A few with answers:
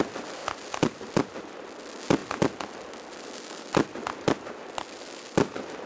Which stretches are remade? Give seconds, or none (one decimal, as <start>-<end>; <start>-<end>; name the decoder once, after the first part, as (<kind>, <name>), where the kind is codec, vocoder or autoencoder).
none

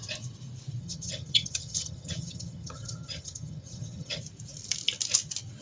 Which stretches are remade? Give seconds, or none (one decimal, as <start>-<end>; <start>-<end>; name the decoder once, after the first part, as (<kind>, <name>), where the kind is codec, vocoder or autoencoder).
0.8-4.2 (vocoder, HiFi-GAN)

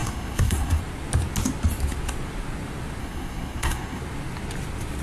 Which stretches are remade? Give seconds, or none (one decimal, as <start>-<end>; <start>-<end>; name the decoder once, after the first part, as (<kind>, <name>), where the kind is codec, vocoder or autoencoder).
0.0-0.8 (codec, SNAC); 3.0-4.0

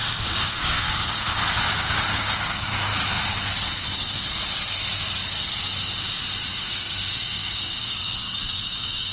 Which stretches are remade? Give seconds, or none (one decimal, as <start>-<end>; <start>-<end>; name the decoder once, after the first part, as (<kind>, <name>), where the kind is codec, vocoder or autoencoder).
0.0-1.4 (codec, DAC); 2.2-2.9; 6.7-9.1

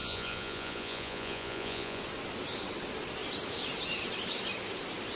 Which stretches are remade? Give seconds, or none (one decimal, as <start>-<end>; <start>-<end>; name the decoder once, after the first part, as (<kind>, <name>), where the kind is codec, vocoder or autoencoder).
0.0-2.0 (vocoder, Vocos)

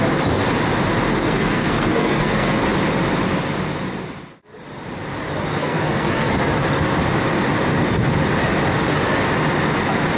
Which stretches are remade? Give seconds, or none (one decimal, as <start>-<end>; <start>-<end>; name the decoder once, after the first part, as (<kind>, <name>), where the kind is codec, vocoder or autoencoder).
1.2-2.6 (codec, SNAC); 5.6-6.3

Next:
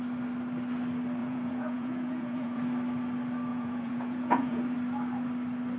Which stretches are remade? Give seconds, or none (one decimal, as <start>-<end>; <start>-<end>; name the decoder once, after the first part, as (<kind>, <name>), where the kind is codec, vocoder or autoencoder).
1.2-2.6 (vocoder, Vocos); 3.5-4.6